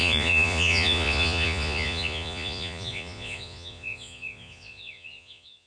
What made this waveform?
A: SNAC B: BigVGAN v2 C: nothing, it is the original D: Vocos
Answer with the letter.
D